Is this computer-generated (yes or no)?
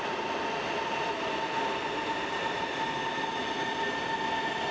no